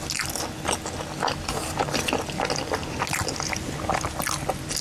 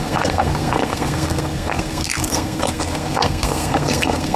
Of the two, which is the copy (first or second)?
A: second